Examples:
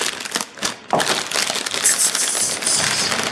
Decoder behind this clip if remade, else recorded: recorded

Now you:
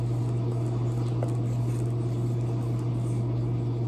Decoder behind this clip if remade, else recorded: recorded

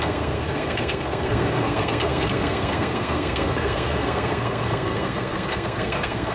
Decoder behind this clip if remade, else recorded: remade, codec, SNAC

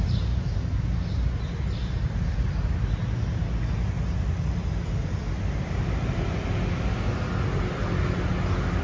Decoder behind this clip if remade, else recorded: recorded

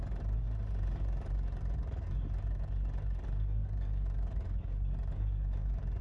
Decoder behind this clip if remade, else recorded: remade, codec, DAC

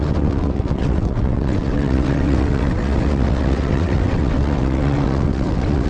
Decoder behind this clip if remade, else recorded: remade, vocoder, WaveNeXt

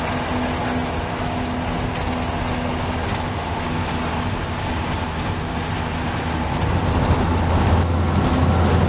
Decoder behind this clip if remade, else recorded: recorded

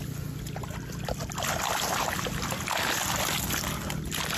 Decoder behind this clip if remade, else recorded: recorded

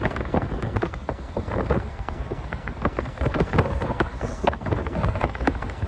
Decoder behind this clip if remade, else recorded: remade, codec, SNAC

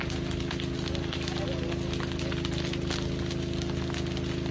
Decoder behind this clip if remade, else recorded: recorded